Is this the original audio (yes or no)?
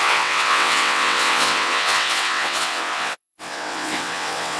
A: no